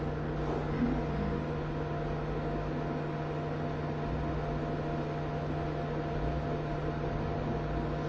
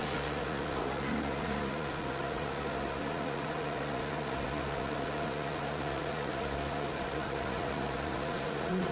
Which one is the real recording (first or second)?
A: first